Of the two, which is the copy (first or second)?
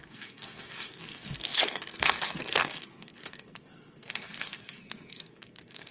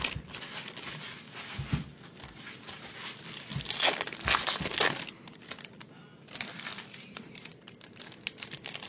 first